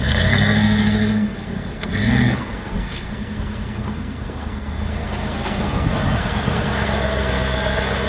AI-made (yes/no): yes